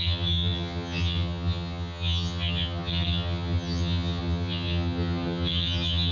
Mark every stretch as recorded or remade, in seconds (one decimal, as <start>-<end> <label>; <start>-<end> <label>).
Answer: 0.0-6.1 remade